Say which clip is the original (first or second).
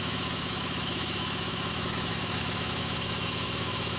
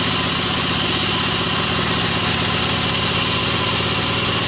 second